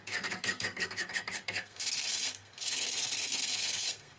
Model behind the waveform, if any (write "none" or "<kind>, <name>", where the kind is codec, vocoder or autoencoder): codec, SNAC